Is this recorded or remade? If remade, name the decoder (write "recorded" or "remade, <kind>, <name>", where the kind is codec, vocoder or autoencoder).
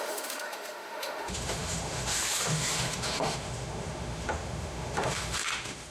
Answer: remade, autoencoder, DAC-VAE